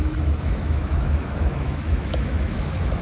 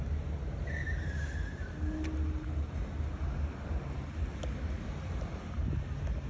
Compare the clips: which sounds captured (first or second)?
second